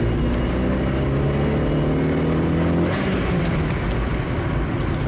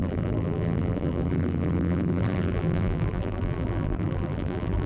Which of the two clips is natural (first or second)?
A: first